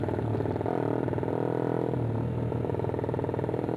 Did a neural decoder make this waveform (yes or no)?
no